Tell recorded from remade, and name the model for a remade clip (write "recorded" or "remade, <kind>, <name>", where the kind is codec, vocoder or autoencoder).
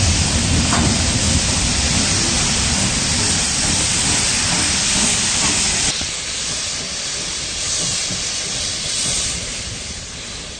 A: recorded